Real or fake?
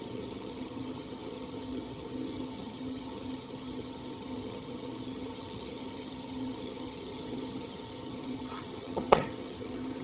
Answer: fake